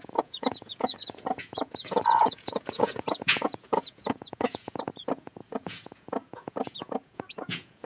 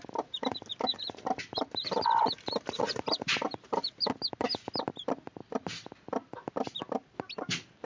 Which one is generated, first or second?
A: first